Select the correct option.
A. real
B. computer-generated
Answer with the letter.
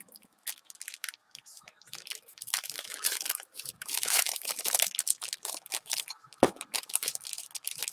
B